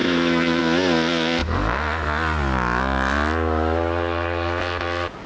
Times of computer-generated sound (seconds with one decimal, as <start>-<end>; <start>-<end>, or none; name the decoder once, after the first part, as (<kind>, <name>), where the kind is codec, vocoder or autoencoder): 0.0-0.6 (autoencoder, DAC-VAE)